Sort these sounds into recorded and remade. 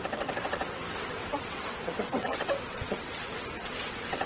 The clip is remade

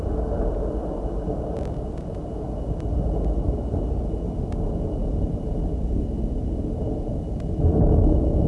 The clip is recorded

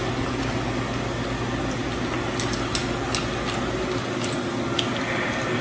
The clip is recorded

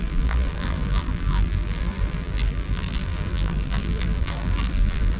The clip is remade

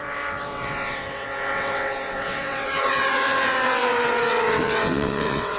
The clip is remade